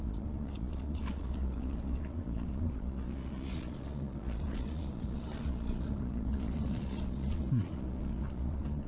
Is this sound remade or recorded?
remade